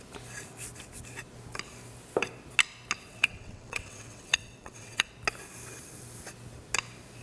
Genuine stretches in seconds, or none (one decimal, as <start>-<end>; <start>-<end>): 0.0-3.1; 5.1-7.2